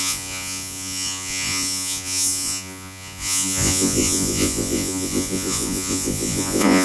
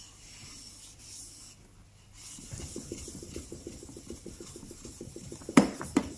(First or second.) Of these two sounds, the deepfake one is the first